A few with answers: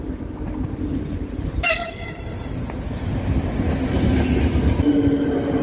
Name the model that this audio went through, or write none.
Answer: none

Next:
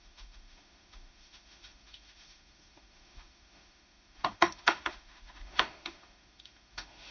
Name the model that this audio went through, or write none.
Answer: autoencoder, DAC-VAE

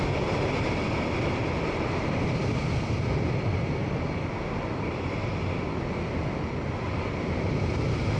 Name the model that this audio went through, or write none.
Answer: none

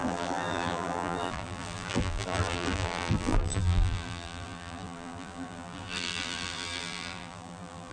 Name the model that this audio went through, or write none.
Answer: vocoder, BigVGAN v2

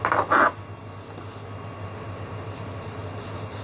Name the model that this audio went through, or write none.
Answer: none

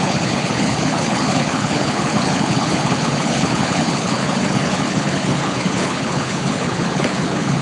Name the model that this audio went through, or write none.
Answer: codec, HILCodec